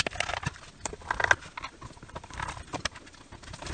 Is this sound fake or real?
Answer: real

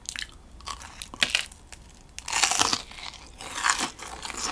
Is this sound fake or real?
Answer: real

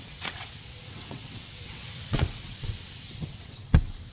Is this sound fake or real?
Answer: fake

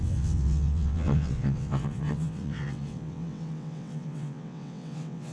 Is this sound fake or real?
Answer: fake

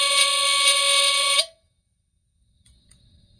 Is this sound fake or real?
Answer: fake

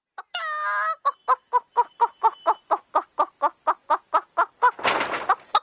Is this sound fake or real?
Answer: real